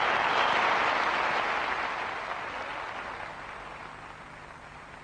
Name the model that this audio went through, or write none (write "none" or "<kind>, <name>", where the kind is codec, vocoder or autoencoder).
none